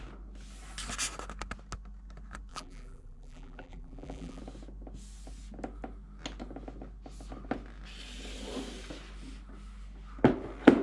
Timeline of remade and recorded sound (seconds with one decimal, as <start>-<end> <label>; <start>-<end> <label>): 0.0-2.5 recorded; 2.5-4.4 remade; 4.4-10.8 recorded